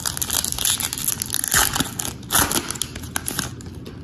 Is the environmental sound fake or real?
real